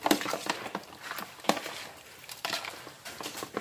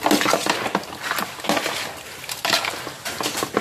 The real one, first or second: second